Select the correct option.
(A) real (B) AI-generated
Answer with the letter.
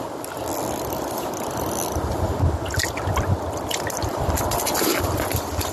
A